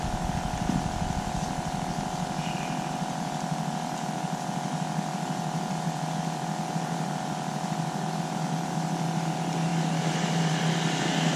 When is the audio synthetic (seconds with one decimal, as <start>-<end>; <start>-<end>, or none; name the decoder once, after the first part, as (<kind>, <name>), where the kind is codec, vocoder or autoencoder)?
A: none